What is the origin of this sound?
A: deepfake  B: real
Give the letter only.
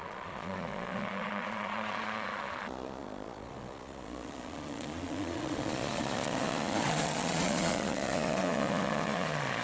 A